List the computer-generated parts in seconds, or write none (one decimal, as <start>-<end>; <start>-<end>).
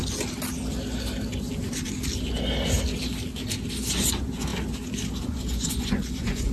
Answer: 3.9-4.5; 5.2-6.5